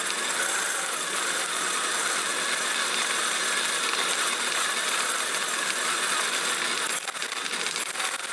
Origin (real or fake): real